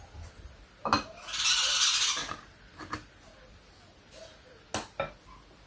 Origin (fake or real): real